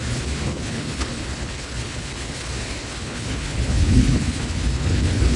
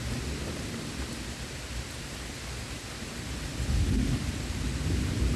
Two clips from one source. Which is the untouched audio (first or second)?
second